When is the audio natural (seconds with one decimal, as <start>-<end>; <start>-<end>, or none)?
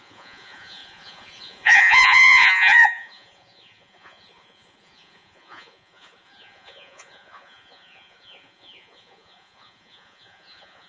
none